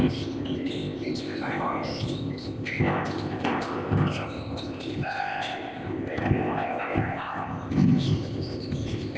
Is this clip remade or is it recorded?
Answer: remade